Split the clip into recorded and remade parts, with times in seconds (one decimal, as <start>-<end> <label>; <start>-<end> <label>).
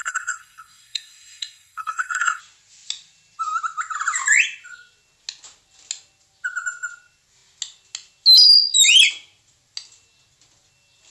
0.0-2.4 remade; 2.4-11.1 recorded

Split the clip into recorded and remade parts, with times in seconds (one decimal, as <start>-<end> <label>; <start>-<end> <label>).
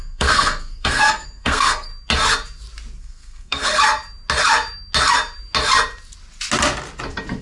0.0-1.9 remade; 1.9-3.0 recorded; 3.0-3.7 remade; 3.7-7.4 recorded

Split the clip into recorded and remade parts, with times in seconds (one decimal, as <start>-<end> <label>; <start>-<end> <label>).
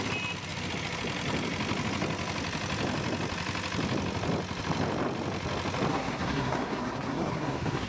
0.0-5.9 recorded; 5.9-7.9 remade